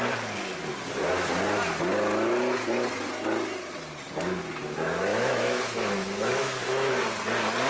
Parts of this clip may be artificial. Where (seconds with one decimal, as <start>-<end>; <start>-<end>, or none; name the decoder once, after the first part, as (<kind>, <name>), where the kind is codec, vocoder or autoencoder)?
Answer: 5.1-6.9 (autoencoder, DAC-VAE)